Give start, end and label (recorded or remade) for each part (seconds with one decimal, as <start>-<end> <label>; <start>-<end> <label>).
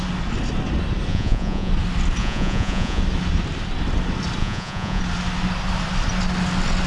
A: 0.0-1.1 recorded; 1.1-1.7 remade; 1.7-2.2 recorded; 2.2-3.0 remade; 3.0-4.4 recorded; 4.4-5.0 remade; 5.0-6.9 recorded